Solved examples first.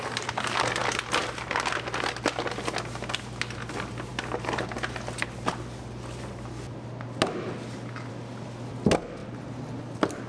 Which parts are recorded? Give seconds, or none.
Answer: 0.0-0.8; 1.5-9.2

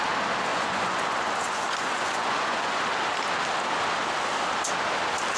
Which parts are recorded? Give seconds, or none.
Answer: 0.0-0.5; 2.8-5.4

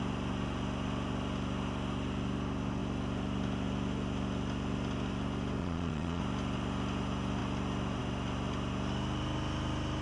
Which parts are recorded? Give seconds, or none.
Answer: 0.0-5.6; 6.2-10.0

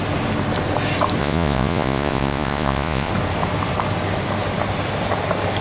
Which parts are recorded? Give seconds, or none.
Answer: 0.0-1.2; 3.1-5.6

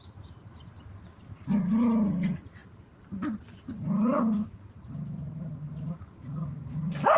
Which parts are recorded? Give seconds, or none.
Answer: 0.0-7.2

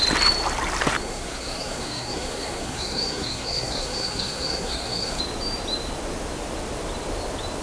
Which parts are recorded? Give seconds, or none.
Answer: 0.0-1.0; 5.2-7.6

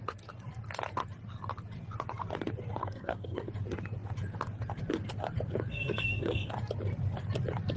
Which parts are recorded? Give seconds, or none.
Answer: 0.0-2.8; 3.5-5.7; 6.5-7.8